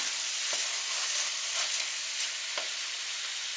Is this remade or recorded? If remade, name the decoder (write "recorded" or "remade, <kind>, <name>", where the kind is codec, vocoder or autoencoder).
recorded